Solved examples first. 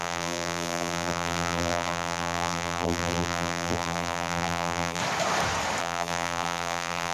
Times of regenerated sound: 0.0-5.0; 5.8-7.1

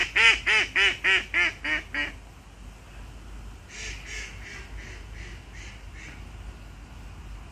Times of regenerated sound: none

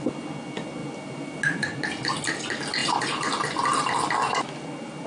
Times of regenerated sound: 0.8-1.4; 2.8-4.1

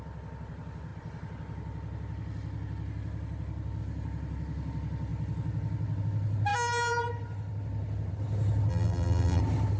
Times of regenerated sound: 8.7-9.4

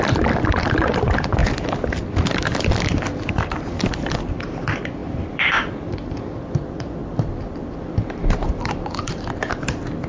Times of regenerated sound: 0.0-1.4; 2.3-10.1

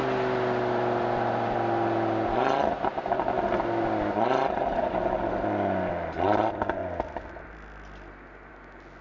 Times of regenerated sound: 0.0-6.8; 8.5-9.0